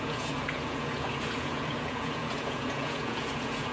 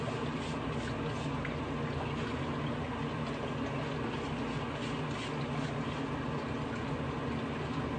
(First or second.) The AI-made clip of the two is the first